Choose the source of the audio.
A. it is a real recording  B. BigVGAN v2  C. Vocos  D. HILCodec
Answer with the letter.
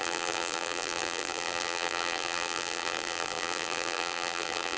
B